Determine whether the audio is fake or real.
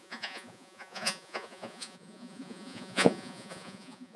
fake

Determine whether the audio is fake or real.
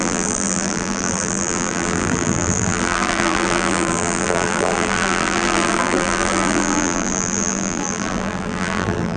fake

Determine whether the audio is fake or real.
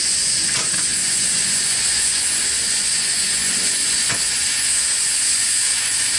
fake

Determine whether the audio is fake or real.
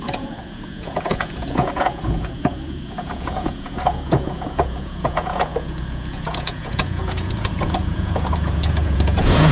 fake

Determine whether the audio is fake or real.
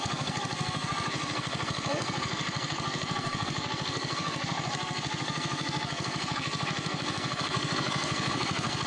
fake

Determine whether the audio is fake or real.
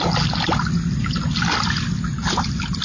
real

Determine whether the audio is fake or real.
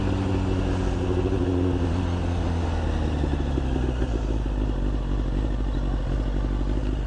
real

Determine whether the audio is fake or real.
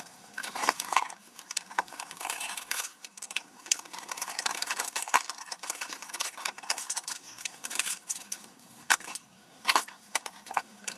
fake